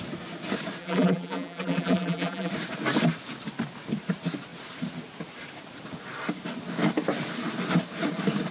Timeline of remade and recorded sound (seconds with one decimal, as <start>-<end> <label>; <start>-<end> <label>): 0.0-0.8 recorded; 0.8-2.5 remade; 2.5-8.5 recorded